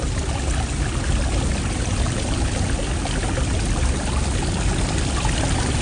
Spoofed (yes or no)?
no